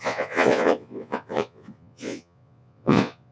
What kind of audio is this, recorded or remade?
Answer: remade